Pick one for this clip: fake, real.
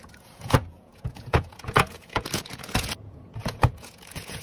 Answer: fake